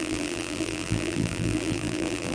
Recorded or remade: remade